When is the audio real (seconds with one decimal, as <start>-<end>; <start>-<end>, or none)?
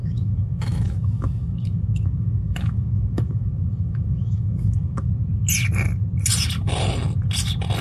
5.1-7.8